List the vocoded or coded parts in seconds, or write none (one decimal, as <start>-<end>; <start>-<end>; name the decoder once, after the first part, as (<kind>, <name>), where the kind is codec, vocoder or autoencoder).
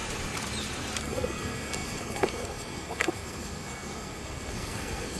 1.0-5.2 (codec, SNAC)